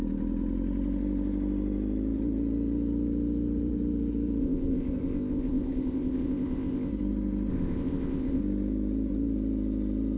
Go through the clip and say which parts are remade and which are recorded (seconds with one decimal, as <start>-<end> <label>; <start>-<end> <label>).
0.0-4.4 recorded; 4.4-6.9 remade; 6.9-7.5 recorded; 7.5-8.4 remade; 8.4-10.2 recorded

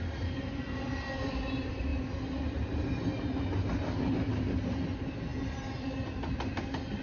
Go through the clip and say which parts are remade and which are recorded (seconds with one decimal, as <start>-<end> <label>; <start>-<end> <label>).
0.0-7.0 recorded

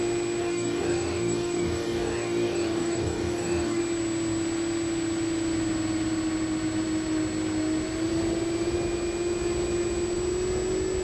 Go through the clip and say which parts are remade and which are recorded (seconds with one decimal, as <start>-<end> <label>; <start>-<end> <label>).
0.0-0.4 recorded; 0.4-3.8 remade; 3.8-11.0 recorded

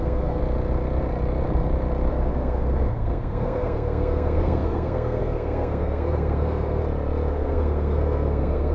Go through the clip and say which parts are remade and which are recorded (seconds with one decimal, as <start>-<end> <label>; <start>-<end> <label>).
0.0-0.4 remade; 0.4-2.1 recorded; 2.1-6.8 remade; 6.8-7.3 recorded; 7.3-8.7 remade

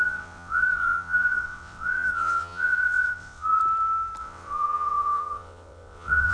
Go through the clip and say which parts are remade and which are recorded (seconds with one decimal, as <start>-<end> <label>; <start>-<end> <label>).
0.0-3.6 remade; 3.6-4.2 recorded; 4.2-6.3 remade

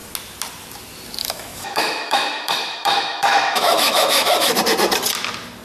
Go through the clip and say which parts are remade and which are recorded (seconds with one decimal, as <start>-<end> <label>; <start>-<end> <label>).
0.0-1.2 recorded; 1.2-4.6 remade; 4.6-5.6 recorded

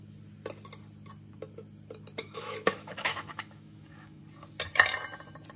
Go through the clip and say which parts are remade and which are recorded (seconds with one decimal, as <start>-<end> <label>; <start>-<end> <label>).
0.0-2.2 recorded; 2.2-4.2 remade; 4.2-5.6 recorded

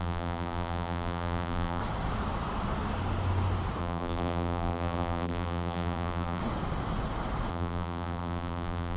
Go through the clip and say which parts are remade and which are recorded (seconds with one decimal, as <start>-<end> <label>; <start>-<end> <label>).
0.0-1.8 remade; 1.8-3.8 recorded; 3.8-6.4 remade; 6.4-7.5 recorded; 7.5-9.0 remade